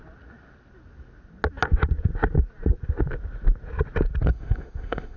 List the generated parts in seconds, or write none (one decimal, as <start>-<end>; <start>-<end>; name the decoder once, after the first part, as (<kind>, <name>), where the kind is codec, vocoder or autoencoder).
4.3-5.2 (autoencoder, DAC-VAE)